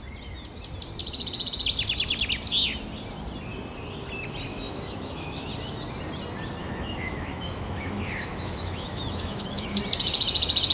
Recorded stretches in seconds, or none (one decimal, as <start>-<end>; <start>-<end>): 0.0-4.5; 5.5-6.6; 9.8-10.7